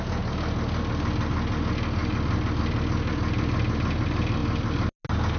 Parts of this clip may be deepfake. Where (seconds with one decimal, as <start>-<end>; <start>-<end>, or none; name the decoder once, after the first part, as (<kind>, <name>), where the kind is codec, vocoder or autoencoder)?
none